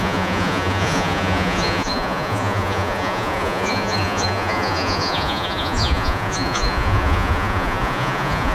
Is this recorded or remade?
remade